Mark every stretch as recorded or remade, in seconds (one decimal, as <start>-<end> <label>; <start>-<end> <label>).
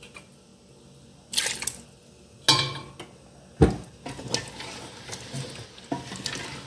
0.0-6.7 recorded